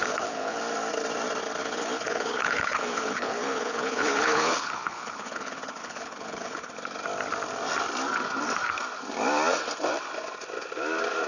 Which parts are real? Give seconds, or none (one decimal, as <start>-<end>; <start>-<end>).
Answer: 0.6-1.6; 6.7-11.3